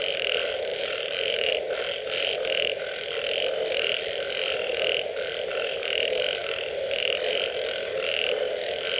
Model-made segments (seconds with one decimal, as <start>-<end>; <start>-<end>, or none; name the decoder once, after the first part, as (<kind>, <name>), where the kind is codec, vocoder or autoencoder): 0.7-1.5 (vocoder, BigVGAN v2)